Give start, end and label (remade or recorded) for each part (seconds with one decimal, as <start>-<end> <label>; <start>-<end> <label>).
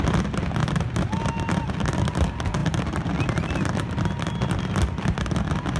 0.0-5.8 recorded